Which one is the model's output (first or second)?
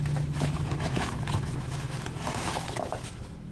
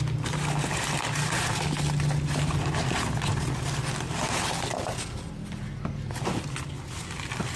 first